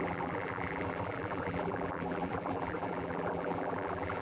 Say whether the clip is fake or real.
fake